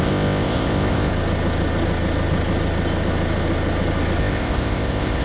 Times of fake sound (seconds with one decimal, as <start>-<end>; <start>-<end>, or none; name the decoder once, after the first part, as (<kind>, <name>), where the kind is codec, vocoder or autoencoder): 0.0-1.1 (codec, ZipCodec); 4.2-5.2